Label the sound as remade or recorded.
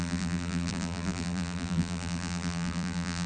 remade